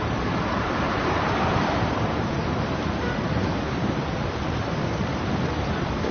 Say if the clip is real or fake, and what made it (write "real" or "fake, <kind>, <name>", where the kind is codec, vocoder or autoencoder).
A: fake, vocoder, BigVGAN v2